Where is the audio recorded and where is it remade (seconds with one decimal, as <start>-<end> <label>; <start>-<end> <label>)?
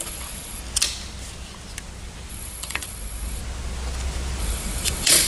0.0-0.6 remade; 0.6-2.3 recorded; 2.3-3.4 remade; 3.4-4.4 recorded; 4.4-5.3 remade